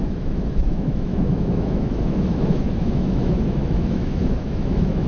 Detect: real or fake fake